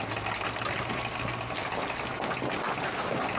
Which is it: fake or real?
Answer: real